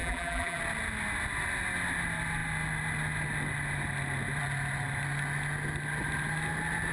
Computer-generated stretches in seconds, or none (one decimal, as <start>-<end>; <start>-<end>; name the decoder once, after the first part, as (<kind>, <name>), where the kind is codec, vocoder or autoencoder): 0.0-0.6 (vocoder, BigVGAN v2)